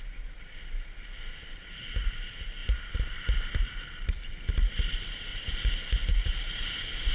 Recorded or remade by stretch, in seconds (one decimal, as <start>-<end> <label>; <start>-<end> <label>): 0.0-2.6 recorded; 2.6-4.4 remade; 4.4-5.3 recorded; 5.3-5.8 remade; 5.8-7.1 recorded